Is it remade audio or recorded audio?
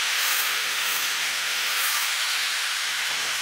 remade